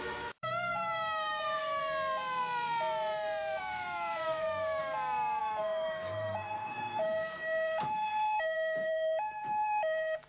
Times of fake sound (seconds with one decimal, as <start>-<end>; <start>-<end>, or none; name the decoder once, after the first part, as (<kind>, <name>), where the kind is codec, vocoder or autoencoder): 0.0-1.8 (autoencoder, DAC-VAE); 3.6-4.8; 5.4-10.3